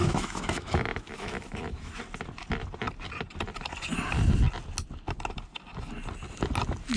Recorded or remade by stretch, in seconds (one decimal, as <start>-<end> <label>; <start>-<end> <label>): 0.0-2.0 remade; 2.0-7.0 recorded